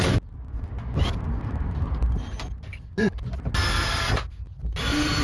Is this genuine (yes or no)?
yes